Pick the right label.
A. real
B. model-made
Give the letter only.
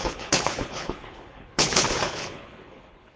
B